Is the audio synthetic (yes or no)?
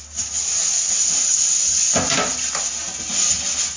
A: no